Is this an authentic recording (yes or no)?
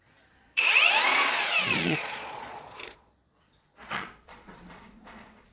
no